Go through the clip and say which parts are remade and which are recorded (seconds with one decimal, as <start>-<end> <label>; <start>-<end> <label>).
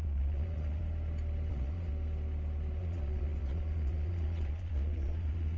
0.0-0.8 remade; 0.8-1.5 recorded; 1.5-1.9 remade; 1.9-2.8 recorded; 2.8-5.6 remade